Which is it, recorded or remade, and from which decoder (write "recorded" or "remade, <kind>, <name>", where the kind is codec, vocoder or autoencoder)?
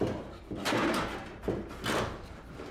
recorded